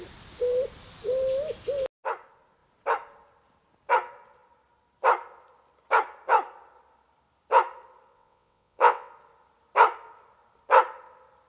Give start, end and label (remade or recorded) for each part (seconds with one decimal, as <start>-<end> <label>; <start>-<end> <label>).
0.0-8.1 recorded; 8.1-9.1 remade; 9.1-11.5 recorded